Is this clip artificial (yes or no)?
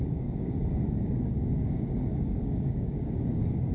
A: yes